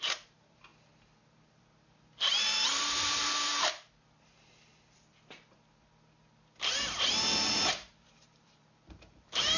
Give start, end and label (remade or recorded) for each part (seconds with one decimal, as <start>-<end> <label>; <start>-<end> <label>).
0.0-0.7 remade; 0.7-2.4 recorded; 2.4-3.5 remade; 3.5-7.7 recorded; 7.7-9.6 remade

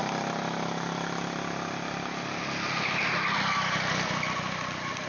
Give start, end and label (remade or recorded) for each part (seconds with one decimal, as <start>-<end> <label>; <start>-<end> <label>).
0.0-5.1 recorded